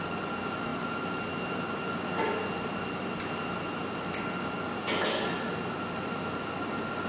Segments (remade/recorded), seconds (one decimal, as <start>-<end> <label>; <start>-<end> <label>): 0.0-7.1 recorded

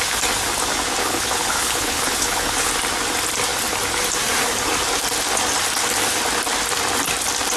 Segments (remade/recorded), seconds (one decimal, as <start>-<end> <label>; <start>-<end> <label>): 0.0-1.0 recorded; 1.0-2.7 remade; 2.7-7.6 recorded

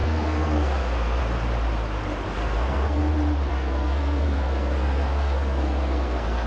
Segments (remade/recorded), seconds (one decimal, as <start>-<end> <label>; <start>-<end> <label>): 0.0-1.2 remade; 1.2-2.4 recorded; 2.4-3.1 remade; 3.1-3.5 recorded; 3.5-6.5 remade

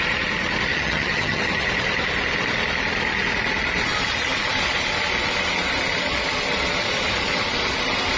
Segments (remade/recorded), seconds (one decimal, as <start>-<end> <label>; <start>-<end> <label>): 0.0-0.7 recorded; 0.7-1.4 remade; 1.4-8.2 recorded

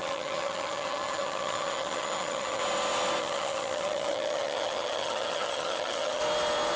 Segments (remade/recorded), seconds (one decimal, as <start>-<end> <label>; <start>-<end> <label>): 0.0-2.6 remade; 2.6-3.2 recorded; 3.2-6.2 remade; 6.2-6.8 recorded

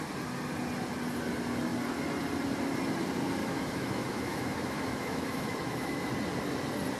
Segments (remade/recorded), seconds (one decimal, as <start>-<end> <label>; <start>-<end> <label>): 0.0-3.4 recorded; 3.4-6.1 remade; 6.1-7.0 recorded

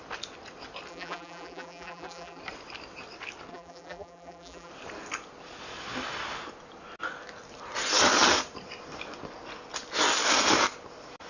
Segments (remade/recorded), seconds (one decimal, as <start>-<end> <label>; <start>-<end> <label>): 0.0-0.9 recorded; 0.9-2.4 remade; 2.4-3.5 recorded; 3.5-4.7 remade; 4.7-11.3 recorded